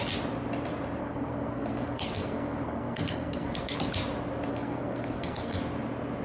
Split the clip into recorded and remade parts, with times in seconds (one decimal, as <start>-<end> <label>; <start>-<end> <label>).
0.0-1.0 recorded; 1.0-3.8 remade; 3.8-4.5 recorded; 4.5-5.6 remade; 5.6-6.2 recorded